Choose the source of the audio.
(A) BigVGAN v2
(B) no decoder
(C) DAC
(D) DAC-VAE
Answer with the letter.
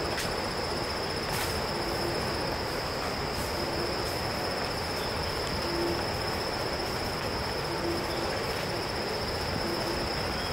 B